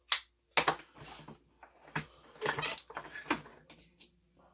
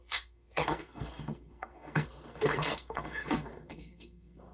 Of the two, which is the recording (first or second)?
first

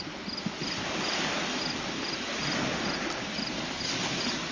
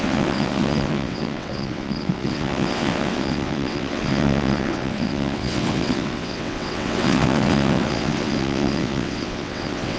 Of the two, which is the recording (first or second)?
first